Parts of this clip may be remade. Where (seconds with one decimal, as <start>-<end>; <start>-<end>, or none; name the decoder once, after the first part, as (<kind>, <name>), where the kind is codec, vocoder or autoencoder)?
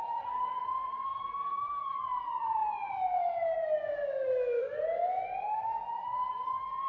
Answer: none